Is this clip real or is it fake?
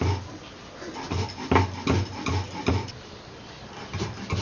real